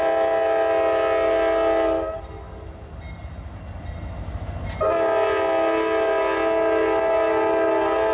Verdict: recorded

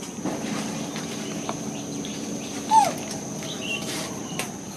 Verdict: recorded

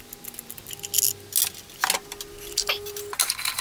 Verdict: recorded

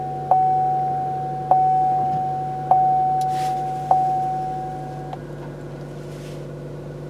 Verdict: recorded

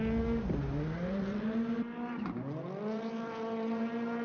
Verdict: recorded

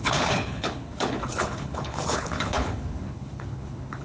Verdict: remade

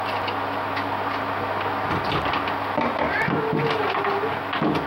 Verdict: recorded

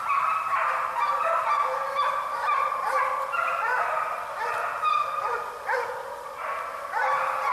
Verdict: recorded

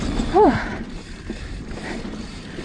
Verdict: remade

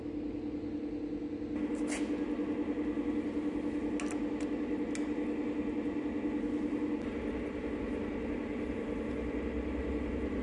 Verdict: recorded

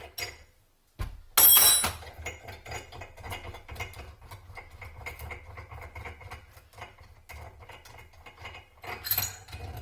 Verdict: recorded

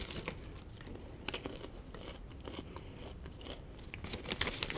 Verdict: recorded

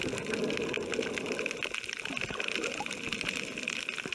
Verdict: recorded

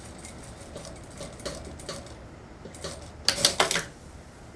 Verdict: recorded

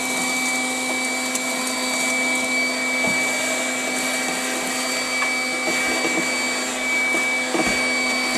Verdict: recorded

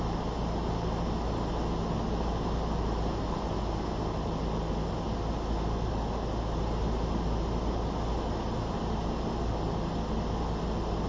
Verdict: recorded